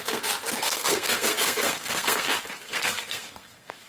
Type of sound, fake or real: fake